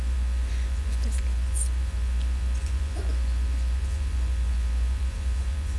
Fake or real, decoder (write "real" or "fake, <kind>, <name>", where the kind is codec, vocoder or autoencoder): fake, vocoder, Vocos